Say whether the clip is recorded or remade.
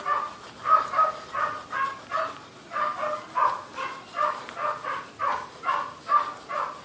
recorded